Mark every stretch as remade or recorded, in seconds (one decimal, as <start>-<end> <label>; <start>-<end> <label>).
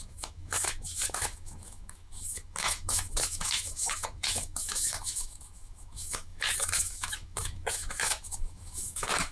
0.0-9.3 remade